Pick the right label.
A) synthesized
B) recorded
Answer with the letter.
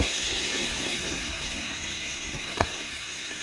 A